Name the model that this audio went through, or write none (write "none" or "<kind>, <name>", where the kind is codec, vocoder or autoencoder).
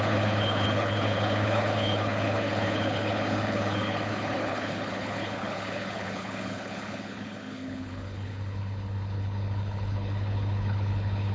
codec, HILCodec